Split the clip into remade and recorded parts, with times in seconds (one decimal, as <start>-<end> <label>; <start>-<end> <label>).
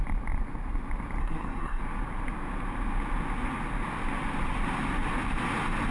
0.0-1.2 recorded; 1.2-1.8 remade; 1.8-5.9 recorded